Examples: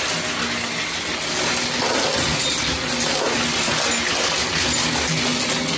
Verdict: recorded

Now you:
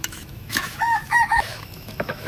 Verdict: remade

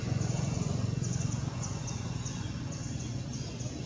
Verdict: remade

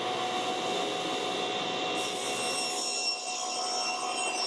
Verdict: recorded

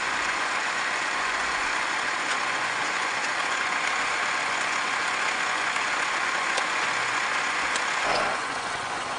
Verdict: remade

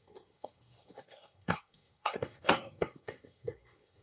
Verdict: remade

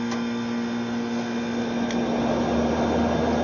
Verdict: recorded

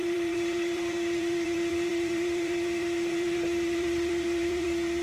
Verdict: remade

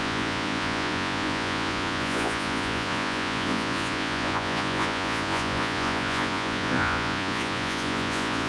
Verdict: remade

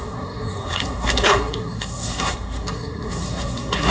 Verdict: remade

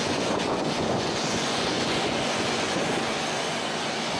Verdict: remade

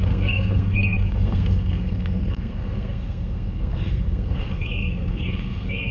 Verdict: remade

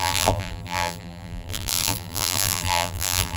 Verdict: remade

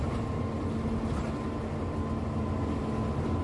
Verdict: recorded